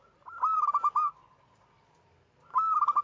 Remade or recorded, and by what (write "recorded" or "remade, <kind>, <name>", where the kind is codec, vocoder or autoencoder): recorded